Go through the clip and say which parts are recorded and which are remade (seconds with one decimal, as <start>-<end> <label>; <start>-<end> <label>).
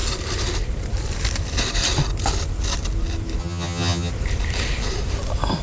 0.0-3.4 recorded; 3.4-4.1 remade; 4.1-5.6 recorded